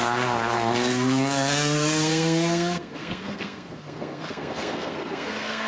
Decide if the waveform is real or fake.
fake